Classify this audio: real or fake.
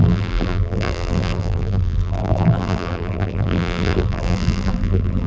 fake